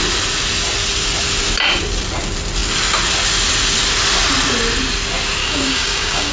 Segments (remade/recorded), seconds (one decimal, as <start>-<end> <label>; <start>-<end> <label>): 0.0-5.4 recorded; 5.4-6.3 remade